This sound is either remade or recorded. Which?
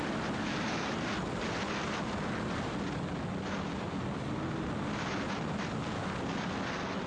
recorded